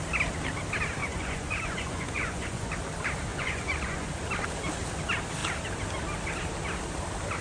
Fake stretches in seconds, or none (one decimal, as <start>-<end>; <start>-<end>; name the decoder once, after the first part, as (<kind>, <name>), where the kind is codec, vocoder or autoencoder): 1.0-2.7 (vocoder, Vocos); 3.3-4.1